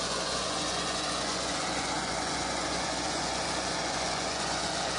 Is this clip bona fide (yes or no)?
no